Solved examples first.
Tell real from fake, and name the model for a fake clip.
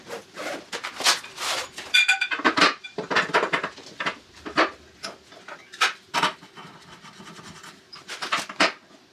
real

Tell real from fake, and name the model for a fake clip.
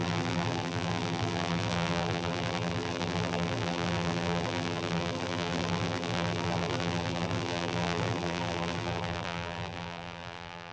fake, vocoder, BigVGAN v2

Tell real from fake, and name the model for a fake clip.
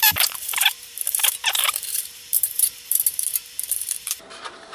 fake, vocoder, BigVGAN v2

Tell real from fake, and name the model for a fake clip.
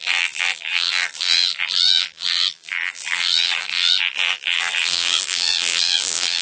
fake, vocoder, BigVGAN v2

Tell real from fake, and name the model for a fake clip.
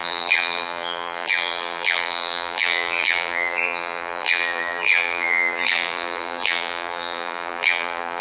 fake, vocoder, BigVGAN v2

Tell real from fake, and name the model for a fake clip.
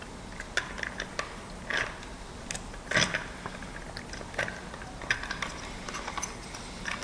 real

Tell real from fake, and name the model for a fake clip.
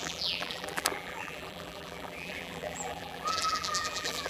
fake, vocoder, BigVGAN v2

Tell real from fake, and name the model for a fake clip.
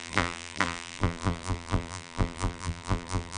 fake, vocoder, BigVGAN v2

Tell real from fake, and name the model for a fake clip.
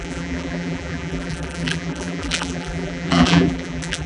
fake, vocoder, BigVGAN v2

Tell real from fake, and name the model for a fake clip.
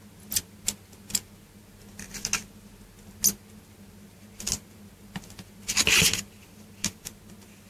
real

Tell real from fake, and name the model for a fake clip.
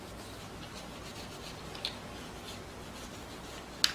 real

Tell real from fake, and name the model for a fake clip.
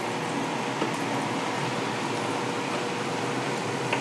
real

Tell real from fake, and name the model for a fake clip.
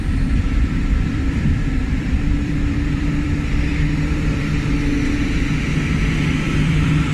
fake, vocoder, BigVGAN v2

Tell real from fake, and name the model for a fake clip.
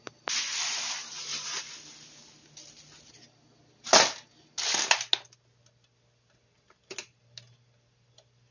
real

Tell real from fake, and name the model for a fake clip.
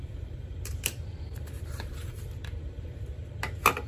fake, vocoder, BigVGAN v2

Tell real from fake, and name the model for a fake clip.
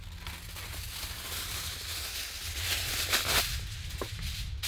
real